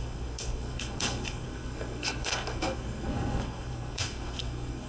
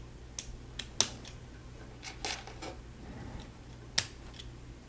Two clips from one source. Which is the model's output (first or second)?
first